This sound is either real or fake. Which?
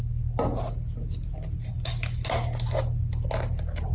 real